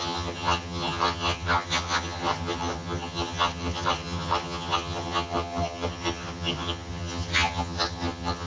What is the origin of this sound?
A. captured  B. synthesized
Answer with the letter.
B